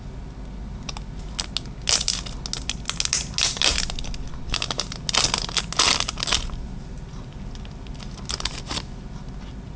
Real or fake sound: real